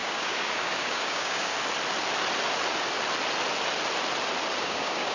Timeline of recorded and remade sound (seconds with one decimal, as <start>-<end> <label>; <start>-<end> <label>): 0.0-1.5 remade; 1.5-4.6 recorded; 4.6-5.1 remade